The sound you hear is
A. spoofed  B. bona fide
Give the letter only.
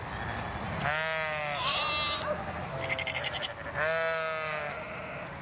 B